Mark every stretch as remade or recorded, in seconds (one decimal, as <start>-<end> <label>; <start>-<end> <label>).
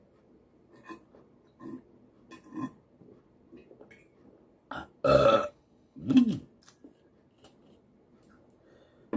0.0-5.4 recorded; 5.4-6.2 remade; 6.2-9.2 recorded